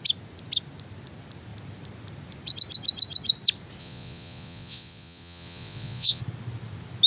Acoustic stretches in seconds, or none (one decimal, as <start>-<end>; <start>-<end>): 0.0-3.8; 6.2-7.1